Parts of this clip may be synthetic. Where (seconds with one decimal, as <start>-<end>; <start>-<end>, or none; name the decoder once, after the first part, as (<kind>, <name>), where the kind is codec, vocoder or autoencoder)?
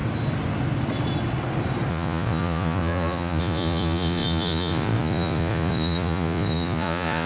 1.9-7.3 (vocoder, Vocos)